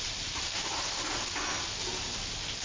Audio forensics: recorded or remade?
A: recorded